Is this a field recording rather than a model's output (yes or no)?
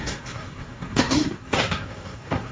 no